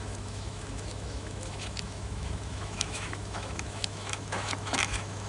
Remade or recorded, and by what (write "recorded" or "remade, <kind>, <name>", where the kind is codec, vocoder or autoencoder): remade, autoencoder, DAC-VAE